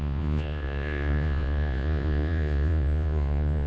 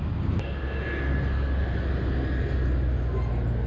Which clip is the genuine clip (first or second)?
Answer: second